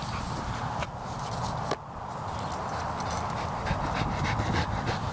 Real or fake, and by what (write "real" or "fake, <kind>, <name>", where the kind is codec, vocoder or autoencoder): real